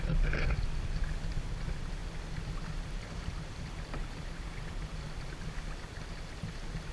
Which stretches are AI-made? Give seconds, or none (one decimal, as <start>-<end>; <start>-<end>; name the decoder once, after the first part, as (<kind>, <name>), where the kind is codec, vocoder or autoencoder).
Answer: none